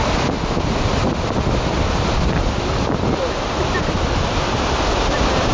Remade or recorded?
recorded